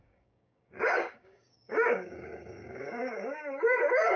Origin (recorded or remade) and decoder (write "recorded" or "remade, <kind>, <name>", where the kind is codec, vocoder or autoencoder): remade, codec, DAC